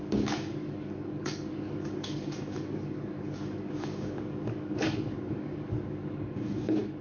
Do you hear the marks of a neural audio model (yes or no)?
yes